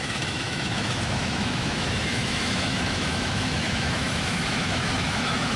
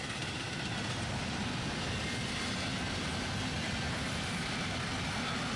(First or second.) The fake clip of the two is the first